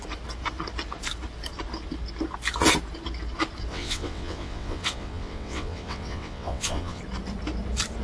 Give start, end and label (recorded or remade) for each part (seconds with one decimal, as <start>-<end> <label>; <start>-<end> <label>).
0.0-3.7 recorded; 3.7-7.0 remade; 7.0-8.0 recorded